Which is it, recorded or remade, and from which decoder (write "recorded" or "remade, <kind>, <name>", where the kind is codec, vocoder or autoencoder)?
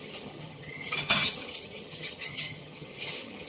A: remade, vocoder, HiFi-GAN